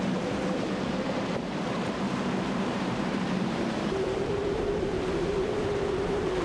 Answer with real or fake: fake